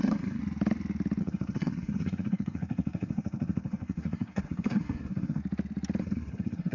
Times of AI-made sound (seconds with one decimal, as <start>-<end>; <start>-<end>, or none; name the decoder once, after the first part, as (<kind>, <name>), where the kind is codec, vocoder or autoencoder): 0.0-0.4 (codec, SNAC); 1.2-5.4; 6.0-6.7

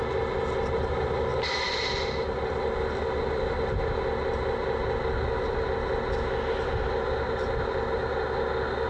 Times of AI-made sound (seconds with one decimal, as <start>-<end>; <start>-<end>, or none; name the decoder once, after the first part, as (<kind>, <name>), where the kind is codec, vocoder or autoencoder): none

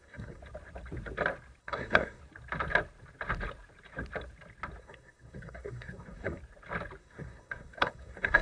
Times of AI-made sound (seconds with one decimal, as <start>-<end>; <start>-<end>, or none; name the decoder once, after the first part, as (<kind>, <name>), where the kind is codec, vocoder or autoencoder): 0.0-0.4 (codec, SNAC); 1.6-2.2; 4.8-6.4; 7.0-8.4

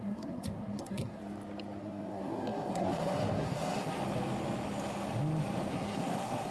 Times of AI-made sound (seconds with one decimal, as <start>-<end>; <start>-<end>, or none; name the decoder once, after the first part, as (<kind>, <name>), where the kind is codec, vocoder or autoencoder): 0.0-1.2 (codec, SNAC); 1.8-4.0; 5.7-6.5

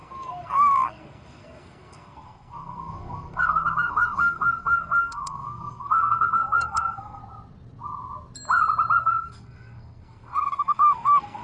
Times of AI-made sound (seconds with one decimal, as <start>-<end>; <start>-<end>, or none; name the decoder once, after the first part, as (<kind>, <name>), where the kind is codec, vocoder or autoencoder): 0.0-7.2 (codec, SNAC); 9.0-11.4

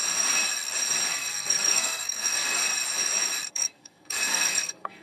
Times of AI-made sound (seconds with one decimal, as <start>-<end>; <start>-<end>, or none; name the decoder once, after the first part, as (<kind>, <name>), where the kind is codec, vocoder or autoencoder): 1.1-2.7 (codec, SNAC); 3.5-5.0

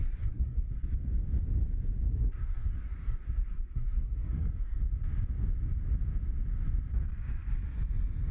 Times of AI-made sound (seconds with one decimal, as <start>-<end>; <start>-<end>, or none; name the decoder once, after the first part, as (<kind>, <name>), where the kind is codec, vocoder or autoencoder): 0.0-0.7 (codec, SNAC); 2.1-4.8